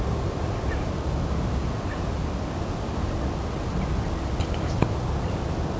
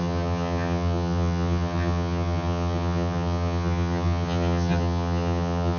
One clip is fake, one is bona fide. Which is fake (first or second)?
second